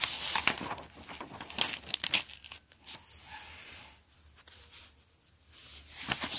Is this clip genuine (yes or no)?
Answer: yes